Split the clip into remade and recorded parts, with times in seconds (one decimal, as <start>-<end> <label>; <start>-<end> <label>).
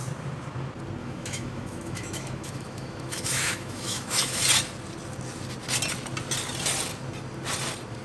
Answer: 0.0-1.0 recorded; 1.0-4.4 remade; 4.4-8.0 recorded